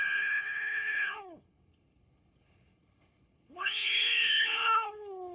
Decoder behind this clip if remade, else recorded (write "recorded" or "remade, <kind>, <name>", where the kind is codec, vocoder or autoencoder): remade, codec, HILCodec